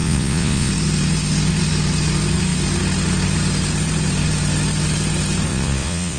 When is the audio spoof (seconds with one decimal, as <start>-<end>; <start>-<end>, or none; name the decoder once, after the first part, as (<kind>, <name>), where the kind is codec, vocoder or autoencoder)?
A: 0.0-0.7 (vocoder, Vocos); 5.5-6.2